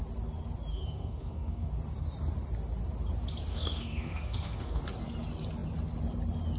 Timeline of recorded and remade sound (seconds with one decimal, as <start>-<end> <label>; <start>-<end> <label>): 0.0-0.7 recorded; 0.7-1.7 remade; 1.7-3.5 recorded; 3.5-4.8 remade; 4.8-6.6 recorded